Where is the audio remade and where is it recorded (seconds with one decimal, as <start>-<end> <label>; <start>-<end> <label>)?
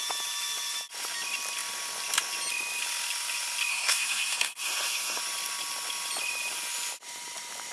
0.0-3.7 recorded; 3.7-5.2 remade; 5.2-7.7 recorded